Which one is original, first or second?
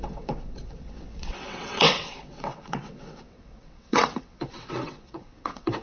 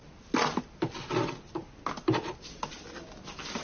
second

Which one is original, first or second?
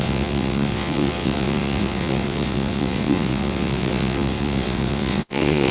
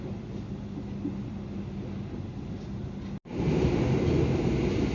second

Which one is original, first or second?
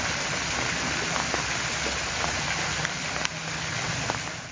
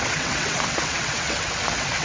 first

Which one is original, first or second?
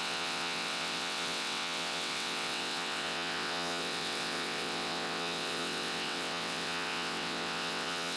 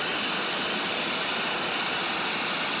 second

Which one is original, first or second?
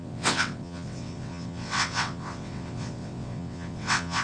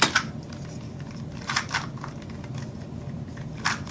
second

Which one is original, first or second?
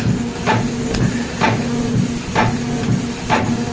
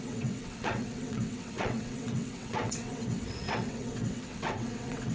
first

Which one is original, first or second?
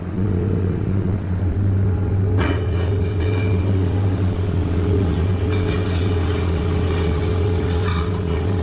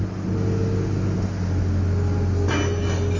second